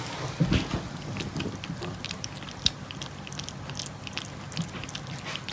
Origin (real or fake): real